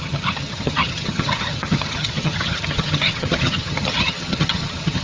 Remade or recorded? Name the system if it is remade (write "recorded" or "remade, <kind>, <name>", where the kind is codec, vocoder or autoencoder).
remade, vocoder, HiFi-GAN